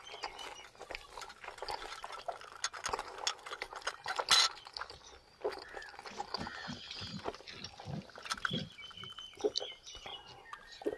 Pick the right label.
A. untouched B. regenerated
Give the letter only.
A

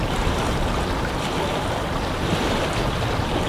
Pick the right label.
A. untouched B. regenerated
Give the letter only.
A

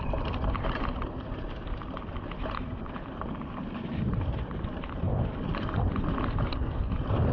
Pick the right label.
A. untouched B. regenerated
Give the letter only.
B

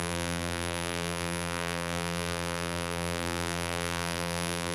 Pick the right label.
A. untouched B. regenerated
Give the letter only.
B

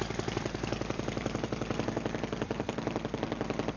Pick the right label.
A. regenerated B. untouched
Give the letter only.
A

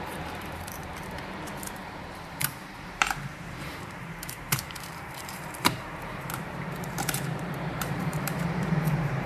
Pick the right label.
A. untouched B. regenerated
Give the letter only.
B